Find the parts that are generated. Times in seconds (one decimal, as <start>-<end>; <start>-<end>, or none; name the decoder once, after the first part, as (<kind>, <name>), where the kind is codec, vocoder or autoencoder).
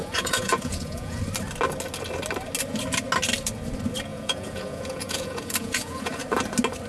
0.0-1.2 (vocoder, Vocos); 4.1-6.2